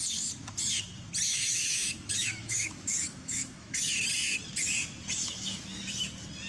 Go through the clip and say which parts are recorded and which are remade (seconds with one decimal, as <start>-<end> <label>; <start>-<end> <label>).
0.0-1.3 recorded; 1.3-3.9 remade; 3.9-5.2 recorded; 5.2-5.8 remade; 5.8-6.5 recorded

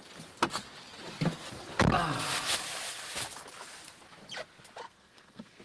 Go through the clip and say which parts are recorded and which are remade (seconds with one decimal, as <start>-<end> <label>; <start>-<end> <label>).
0.0-4.8 recorded; 4.8-5.6 remade

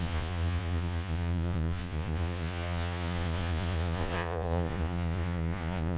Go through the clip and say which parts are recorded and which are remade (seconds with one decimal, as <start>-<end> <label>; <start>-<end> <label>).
0.0-6.0 remade

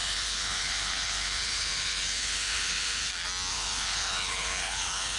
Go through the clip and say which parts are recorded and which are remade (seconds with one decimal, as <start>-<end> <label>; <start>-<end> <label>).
0.0-3.1 remade; 3.1-3.5 recorded; 3.5-5.2 remade

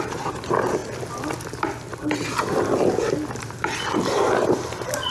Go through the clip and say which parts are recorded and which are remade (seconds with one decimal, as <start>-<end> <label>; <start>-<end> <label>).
0.0-0.8 remade; 0.8-3.3 recorded; 3.3-5.1 remade